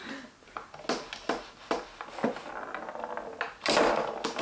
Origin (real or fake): real